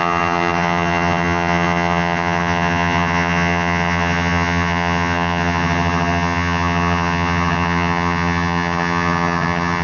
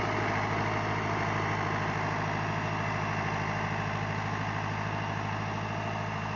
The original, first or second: second